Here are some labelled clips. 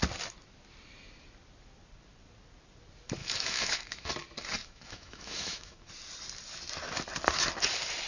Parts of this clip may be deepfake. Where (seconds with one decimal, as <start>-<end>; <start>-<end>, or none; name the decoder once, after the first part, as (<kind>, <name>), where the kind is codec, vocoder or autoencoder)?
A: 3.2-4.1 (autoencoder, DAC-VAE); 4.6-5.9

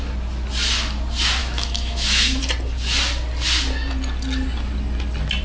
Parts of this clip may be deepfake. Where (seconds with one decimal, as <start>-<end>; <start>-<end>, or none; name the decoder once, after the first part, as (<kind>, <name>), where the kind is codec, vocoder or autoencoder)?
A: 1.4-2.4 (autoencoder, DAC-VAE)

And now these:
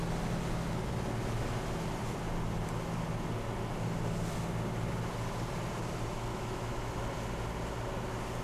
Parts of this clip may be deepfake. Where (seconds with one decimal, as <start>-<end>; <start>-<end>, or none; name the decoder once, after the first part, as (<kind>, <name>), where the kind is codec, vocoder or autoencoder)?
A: 6.3-6.9 (autoencoder, DAC-VAE)